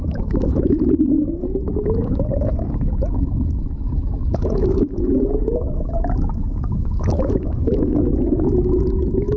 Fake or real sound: fake